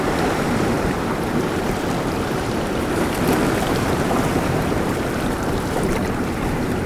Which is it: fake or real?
fake